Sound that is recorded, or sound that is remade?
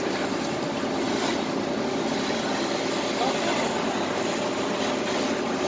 recorded